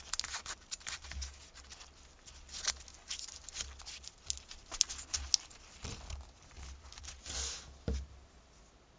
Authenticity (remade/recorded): recorded